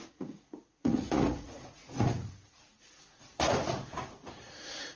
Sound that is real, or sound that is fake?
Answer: fake